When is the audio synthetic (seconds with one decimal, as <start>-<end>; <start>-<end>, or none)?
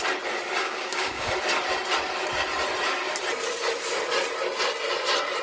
0.6-1.3